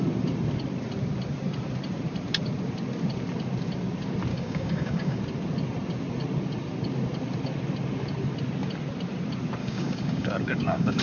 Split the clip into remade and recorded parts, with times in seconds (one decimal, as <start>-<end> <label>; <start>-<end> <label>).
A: 0.0-4.3 recorded; 4.3-5.2 remade; 5.2-9.6 recorded; 9.6-11.0 remade